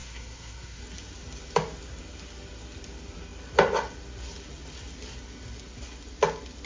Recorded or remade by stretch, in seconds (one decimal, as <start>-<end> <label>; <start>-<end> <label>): 0.0-0.8 remade; 0.8-6.7 recorded

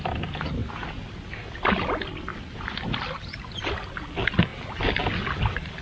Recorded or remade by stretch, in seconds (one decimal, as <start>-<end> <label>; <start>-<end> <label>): 0.0-5.8 recorded

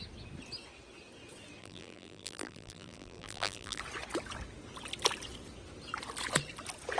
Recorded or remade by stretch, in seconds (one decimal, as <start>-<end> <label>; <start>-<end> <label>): 0.0-1.6 recorded; 1.6-3.8 remade; 3.8-7.0 recorded

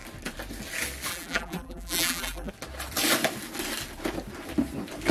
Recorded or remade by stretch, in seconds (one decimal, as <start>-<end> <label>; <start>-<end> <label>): 0.0-1.1 recorded; 1.1-2.5 remade; 2.5-5.1 recorded

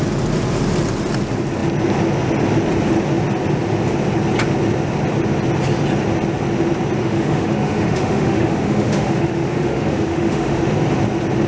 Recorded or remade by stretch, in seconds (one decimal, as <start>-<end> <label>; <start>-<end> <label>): 0.0-7.0 recorded; 7.0-10.6 remade; 10.6-11.5 recorded

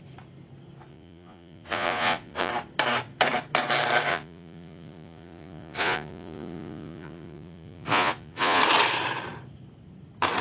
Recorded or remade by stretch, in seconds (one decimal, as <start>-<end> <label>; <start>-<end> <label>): 0.0-0.9 recorded; 0.9-2.5 remade; 2.5-4.1 recorded; 4.1-8.6 remade; 8.6-10.4 recorded

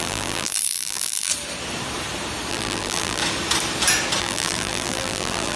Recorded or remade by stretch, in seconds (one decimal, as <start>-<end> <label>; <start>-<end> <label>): 0.0-1.3 remade; 1.3-2.5 recorded; 2.5-3.2 remade; 3.2-4.2 recorded; 4.2-5.6 remade